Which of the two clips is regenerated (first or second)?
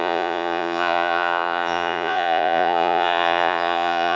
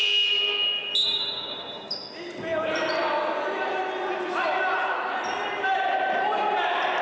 first